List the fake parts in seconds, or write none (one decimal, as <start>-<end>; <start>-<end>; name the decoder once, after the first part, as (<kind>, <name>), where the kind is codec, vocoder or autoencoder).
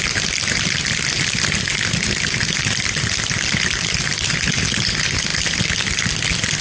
none